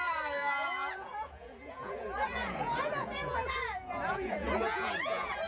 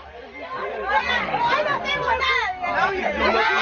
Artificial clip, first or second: first